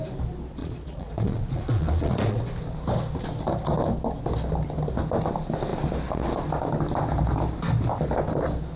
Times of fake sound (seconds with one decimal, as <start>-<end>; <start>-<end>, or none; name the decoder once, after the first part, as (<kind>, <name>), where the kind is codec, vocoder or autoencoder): 0.6-2.4 (vocoder, Vocos)

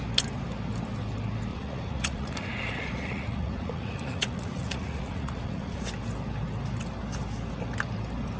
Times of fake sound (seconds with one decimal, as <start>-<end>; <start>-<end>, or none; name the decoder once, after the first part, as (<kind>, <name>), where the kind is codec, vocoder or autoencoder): 1.5-5.8 (vocoder, Vocos)

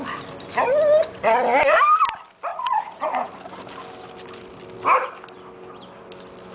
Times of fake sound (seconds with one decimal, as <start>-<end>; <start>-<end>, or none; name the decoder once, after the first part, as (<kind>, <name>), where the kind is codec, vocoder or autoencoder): 2.5-3.3 (vocoder, Vocos)

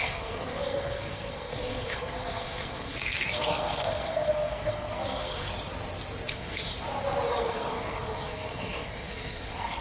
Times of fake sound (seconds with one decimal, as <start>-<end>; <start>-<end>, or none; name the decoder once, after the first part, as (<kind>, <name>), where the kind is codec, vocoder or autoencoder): 0.0-5.5 (codec, SNAC); 6.3-6.7; 7.4-9.8